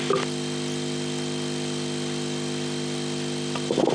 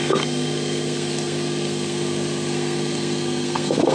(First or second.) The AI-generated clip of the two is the second